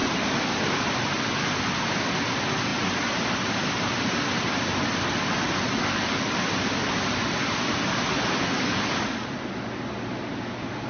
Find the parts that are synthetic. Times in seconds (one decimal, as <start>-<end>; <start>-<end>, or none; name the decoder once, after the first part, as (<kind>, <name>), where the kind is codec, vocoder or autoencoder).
none